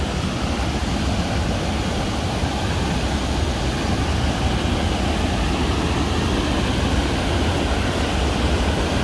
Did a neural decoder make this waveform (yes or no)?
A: no